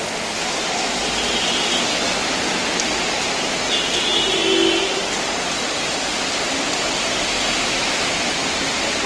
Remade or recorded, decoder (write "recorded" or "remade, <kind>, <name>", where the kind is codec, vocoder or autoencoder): recorded